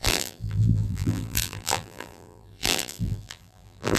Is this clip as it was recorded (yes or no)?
no